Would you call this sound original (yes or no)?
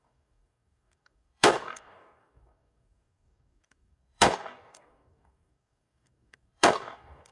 no